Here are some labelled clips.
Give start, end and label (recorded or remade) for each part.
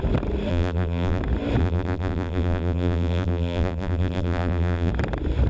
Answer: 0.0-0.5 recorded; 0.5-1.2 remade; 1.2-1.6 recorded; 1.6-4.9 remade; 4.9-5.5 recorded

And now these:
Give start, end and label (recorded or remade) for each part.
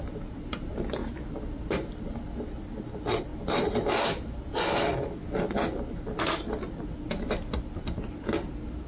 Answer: 0.0-1.0 recorded; 1.0-1.9 remade; 1.9-3.3 recorded; 3.3-4.5 remade; 4.5-8.9 recorded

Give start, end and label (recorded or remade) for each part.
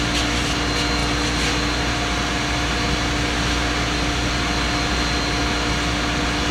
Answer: 0.0-6.5 recorded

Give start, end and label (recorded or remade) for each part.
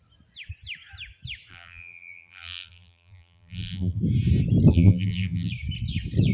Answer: 0.0-1.5 recorded; 1.5-4.0 remade; 4.0-4.7 recorded; 4.7-5.5 remade; 5.5-6.3 recorded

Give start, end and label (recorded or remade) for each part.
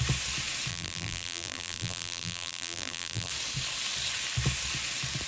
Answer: 0.0-0.7 recorded; 0.7-3.3 remade; 3.3-5.3 recorded